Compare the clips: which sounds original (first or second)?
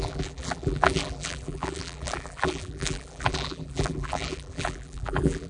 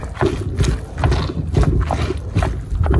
second